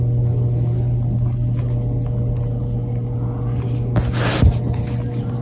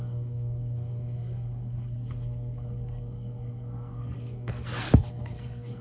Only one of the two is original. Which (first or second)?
first